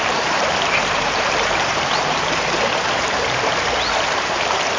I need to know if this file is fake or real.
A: fake